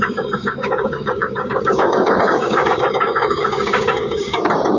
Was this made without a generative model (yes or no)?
no